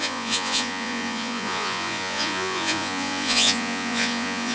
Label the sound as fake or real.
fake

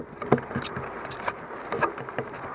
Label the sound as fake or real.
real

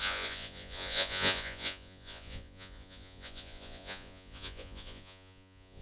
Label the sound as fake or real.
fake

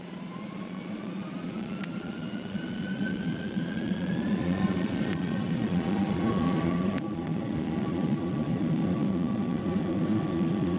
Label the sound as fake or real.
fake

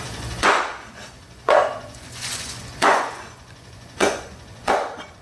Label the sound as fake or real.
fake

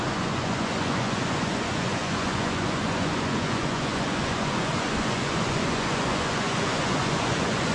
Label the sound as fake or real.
fake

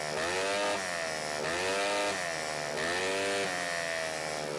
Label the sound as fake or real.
real